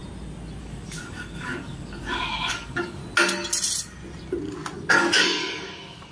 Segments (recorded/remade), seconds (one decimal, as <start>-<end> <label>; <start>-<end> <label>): 0.0-0.6 recorded; 0.6-3.0 remade; 3.0-4.9 recorded; 4.9-6.1 remade